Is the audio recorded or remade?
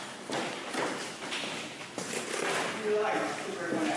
recorded